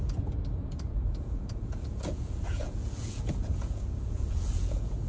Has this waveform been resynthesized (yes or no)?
yes